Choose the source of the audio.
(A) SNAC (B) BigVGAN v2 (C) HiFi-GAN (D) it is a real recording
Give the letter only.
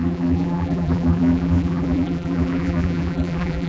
B